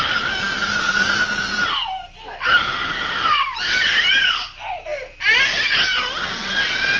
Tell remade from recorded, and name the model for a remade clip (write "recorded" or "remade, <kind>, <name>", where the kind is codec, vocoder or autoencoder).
recorded